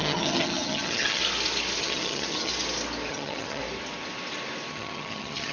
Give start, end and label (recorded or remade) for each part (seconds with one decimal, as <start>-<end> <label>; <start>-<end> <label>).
0.0-1.2 remade; 1.2-1.8 recorded; 1.8-2.5 remade; 2.5-3.1 recorded; 3.1-3.6 remade; 3.6-4.7 recorded; 4.7-5.5 remade